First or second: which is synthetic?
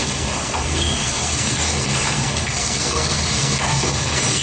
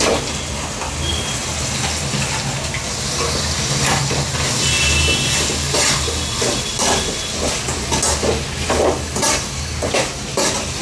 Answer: first